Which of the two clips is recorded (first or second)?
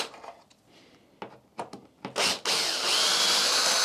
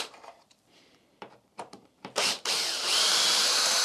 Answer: first